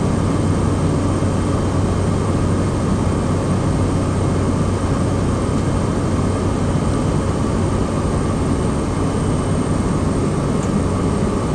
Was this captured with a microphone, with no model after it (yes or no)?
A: yes